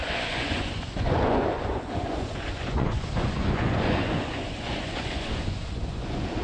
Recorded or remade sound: remade